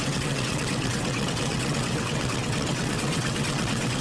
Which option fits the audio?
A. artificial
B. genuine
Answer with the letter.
A